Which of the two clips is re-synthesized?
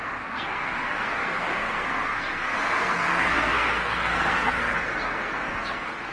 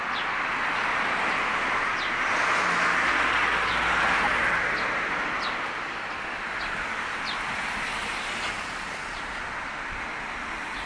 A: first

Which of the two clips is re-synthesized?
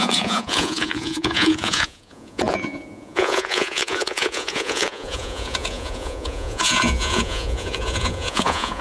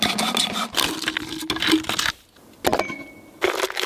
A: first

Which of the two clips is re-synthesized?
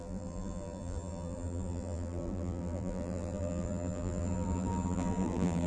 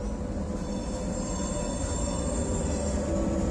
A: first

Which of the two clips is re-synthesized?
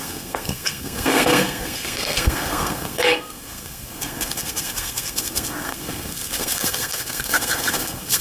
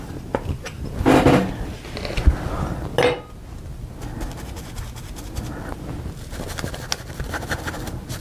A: first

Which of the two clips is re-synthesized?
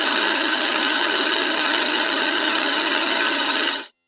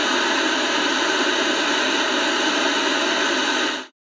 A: first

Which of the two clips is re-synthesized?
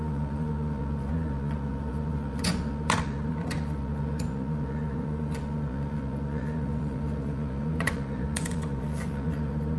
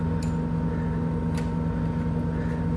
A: first